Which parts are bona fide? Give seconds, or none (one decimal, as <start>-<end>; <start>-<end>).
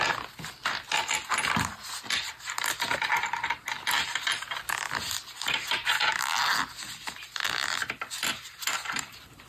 0.0-7.8; 8.4-9.5